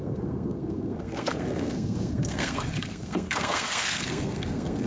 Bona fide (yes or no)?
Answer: no